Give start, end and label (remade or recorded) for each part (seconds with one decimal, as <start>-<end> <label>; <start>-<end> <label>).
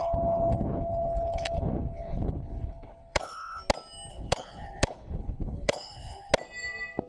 0.0-3.6 remade; 3.6-4.1 recorded; 4.1-6.3 remade; 6.3-7.1 recorded